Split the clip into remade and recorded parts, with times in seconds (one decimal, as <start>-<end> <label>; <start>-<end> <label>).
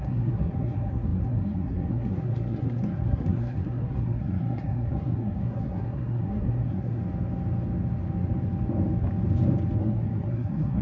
0.0-7.0 remade; 7.0-9.8 recorded; 9.8-10.8 remade